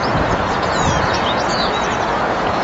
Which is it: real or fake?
fake